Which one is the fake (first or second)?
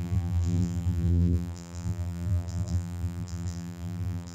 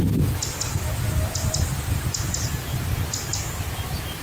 first